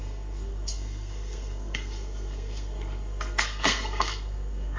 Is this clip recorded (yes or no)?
no